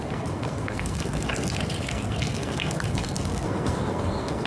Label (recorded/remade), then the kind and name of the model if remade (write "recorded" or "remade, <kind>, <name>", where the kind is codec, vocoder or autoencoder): remade, codec, SNAC